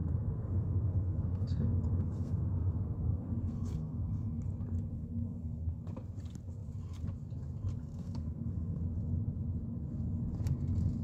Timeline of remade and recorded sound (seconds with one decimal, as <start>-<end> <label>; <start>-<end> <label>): 0.0-4.4 remade; 4.4-4.9 recorded; 4.9-5.8 remade; 5.8-7.8 recorded; 7.8-8.8 remade; 8.8-11.0 recorded